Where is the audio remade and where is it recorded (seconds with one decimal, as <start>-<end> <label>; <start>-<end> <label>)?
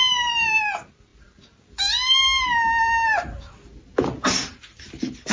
0.0-5.3 recorded